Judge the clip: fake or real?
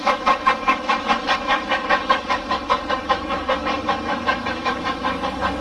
fake